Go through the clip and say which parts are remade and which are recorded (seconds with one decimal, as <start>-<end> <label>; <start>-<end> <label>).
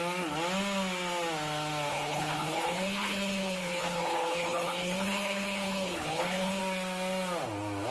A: 0.0-1.9 recorded; 1.9-6.6 remade; 6.6-7.9 recorded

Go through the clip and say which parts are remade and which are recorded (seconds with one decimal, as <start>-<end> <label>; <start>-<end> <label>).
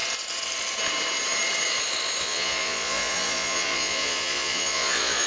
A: 0.0-2.2 recorded; 2.2-5.3 remade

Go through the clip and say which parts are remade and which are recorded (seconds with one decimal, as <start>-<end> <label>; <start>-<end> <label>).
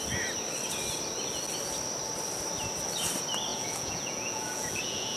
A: 0.0-3.5 recorded; 3.5-5.2 remade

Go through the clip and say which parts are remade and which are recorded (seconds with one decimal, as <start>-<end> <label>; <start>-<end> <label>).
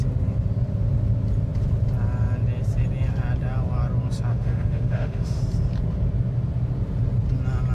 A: 0.0-4.3 recorded; 4.3-5.4 remade; 5.4-7.7 recorded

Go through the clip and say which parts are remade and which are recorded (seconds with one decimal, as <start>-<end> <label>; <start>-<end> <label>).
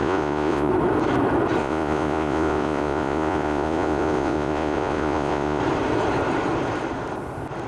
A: 0.0-0.7 remade; 0.7-1.6 recorded; 1.6-5.6 remade; 5.6-7.7 recorded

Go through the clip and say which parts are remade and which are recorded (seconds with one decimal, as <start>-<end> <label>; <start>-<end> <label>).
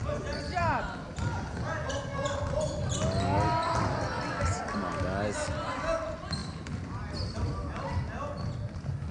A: 0.0-6.4 recorded; 6.4-7.9 remade; 7.9-9.1 recorded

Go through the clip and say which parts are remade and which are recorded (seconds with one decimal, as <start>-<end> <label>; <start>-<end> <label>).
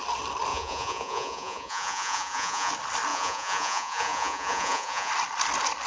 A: 0.0-0.5 recorded; 0.5-2.7 remade; 2.7-3.1 recorded; 3.1-5.1 remade; 5.1-5.9 recorded